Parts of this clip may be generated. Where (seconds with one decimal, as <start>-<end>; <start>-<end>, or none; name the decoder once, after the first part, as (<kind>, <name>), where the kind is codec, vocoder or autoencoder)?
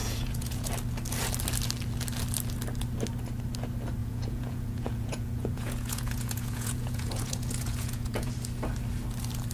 0.0-0.7 (vocoder, Vocos); 4.0-8.3